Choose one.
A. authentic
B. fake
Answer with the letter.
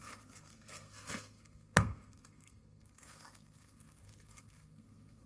B